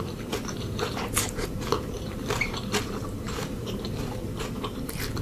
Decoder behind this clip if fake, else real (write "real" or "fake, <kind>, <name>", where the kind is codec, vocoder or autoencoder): fake, vocoder, BigVGAN v2